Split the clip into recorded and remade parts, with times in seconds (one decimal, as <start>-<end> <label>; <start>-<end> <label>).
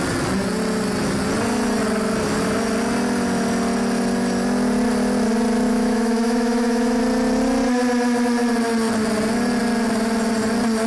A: 0.0-5.7 recorded; 5.7-7.0 remade; 7.0-10.9 recorded